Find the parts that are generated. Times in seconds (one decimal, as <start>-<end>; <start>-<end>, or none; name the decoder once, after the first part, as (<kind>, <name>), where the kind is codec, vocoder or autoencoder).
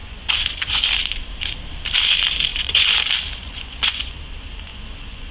0.0-0.8 (vocoder, Vocos); 2.5-3.0; 3.4-4.2; 4.7-5.3